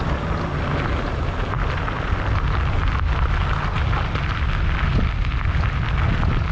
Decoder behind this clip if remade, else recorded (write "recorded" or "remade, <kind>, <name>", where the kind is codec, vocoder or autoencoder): recorded